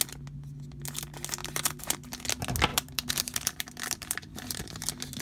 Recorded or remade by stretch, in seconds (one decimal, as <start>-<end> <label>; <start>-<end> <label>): 0.0-1.4 recorded; 1.4-1.9 remade; 1.9-2.7 recorded; 2.7-4.8 remade; 4.8-5.2 recorded